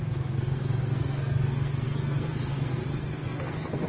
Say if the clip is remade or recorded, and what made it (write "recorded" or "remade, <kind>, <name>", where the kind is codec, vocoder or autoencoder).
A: remade, codec, SNAC